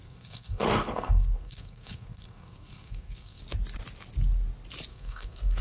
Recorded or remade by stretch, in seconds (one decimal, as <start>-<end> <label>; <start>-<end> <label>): 0.0-3.4 remade; 3.4-4.9 recorded; 4.9-5.6 remade